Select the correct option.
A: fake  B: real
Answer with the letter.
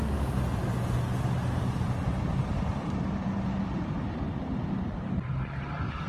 B